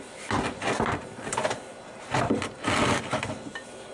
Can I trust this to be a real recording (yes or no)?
yes